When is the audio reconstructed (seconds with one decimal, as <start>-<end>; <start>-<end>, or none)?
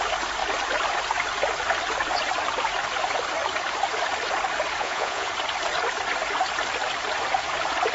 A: 4.8-5.3